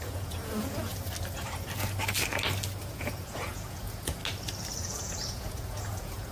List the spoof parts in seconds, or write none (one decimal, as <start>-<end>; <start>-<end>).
0.0-0.9; 2.8-4.2; 4.8-6.3